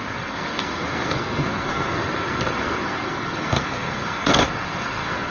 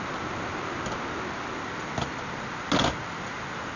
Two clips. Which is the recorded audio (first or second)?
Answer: second